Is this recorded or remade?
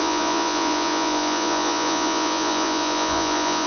remade